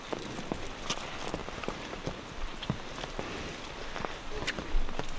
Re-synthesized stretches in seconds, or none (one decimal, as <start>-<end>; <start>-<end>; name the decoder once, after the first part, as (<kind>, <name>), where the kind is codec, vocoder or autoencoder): 1.4-3.2 (vocoder, BigVGAN v2)